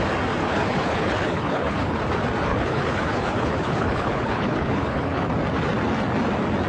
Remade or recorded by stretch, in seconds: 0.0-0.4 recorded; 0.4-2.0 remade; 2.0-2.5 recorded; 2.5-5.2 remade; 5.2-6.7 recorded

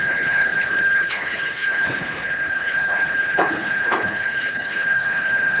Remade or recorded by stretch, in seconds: 0.0-5.6 remade

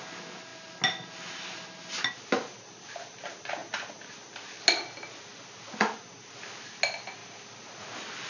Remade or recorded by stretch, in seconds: 0.0-8.3 recorded

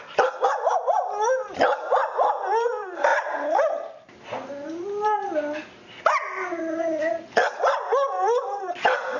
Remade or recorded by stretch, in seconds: 0.0-9.2 recorded

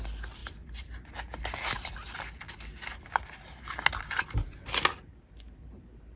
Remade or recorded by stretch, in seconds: 0.0-6.2 recorded

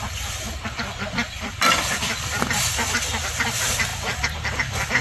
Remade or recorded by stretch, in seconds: 0.0-5.0 recorded

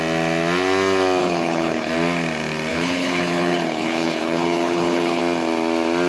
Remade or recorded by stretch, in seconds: 0.0-1.2 recorded; 1.2-1.9 remade; 1.9-2.7 recorded; 2.7-5.2 remade; 5.2-6.1 recorded

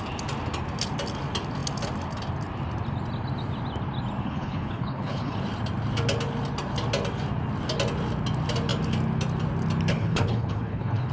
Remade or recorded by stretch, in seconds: 0.0-4.2 recorded; 4.2-5.4 remade; 5.4-9.9 recorded; 9.9-11.1 remade